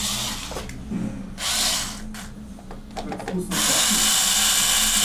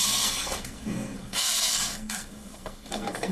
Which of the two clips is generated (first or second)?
second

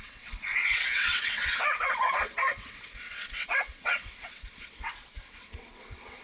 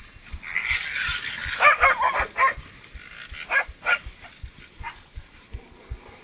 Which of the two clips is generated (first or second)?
first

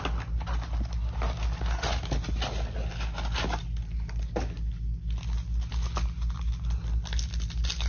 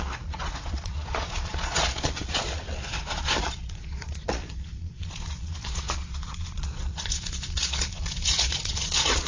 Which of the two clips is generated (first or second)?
second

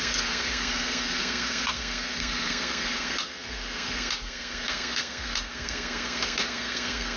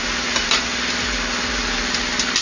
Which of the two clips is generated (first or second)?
first